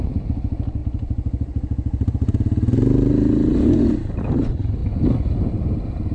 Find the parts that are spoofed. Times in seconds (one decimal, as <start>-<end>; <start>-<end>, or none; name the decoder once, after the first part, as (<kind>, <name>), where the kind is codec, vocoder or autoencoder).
0.0-0.8 (vocoder, BigVGAN v2); 3.1-4.8; 5.5-6.1